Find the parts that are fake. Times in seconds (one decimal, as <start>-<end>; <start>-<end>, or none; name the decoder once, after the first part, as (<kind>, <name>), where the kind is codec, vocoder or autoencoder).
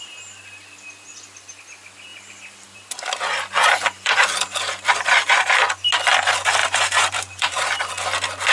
2.1-5.5 (vocoder, BigVGAN v2); 6.6-7.8